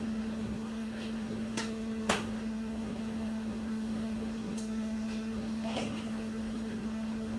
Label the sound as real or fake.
fake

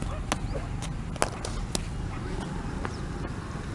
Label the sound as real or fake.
real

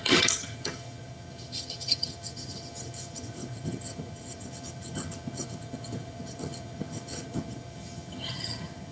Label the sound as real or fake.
fake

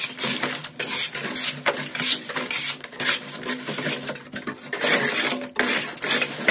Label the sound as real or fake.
real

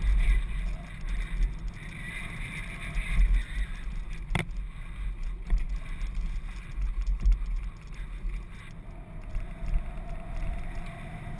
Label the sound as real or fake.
real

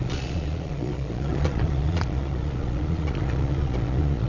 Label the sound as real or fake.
fake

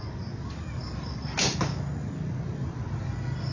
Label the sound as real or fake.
real